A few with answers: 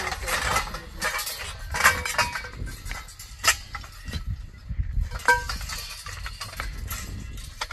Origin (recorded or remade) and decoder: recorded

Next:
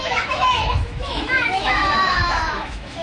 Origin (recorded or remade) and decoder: remade, autoencoder, DAC-VAE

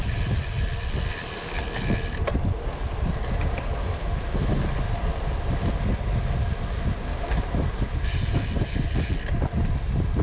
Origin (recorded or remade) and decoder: recorded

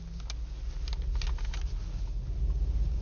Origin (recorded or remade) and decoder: recorded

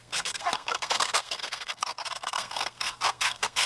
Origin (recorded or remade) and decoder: remade, codec, SNAC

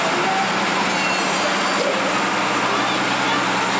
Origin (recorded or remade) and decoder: recorded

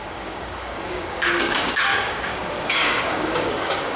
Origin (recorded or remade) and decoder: remade, codec, DAC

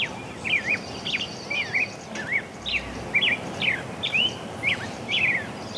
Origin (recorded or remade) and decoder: remade, vocoder, BigVGAN v2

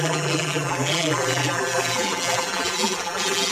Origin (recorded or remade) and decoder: remade, vocoder, BigVGAN v2